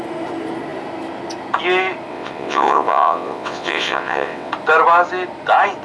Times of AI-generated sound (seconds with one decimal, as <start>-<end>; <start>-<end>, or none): 2.1-4.5